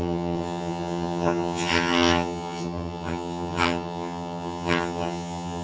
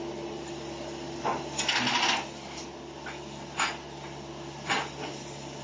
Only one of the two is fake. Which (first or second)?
first